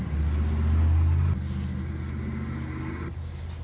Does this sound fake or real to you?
real